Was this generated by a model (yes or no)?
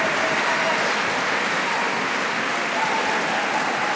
no